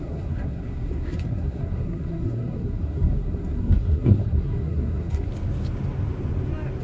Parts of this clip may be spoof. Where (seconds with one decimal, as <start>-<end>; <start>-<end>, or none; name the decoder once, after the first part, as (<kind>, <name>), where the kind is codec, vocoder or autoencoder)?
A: 0.0-5.3 (codec, SNAC)